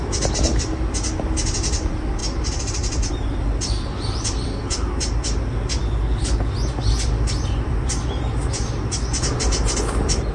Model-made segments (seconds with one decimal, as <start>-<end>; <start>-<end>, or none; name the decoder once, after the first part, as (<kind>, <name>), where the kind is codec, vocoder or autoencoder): 5.8-6.5 (codec, HILCodec)